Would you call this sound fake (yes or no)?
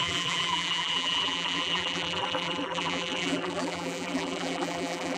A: yes